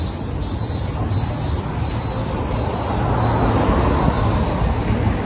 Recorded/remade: recorded